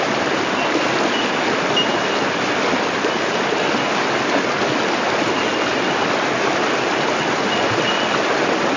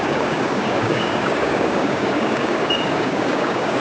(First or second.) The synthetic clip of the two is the second